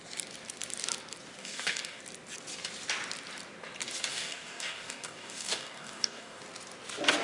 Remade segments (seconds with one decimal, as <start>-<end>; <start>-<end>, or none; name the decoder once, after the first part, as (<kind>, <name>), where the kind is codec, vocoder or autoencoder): 1.4-2.0 (codec, DAC); 4.1-6.4